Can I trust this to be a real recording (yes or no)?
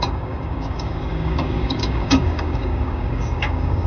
no